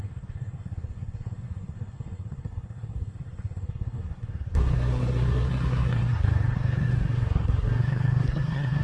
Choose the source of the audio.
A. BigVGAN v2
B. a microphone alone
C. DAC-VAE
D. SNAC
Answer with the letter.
D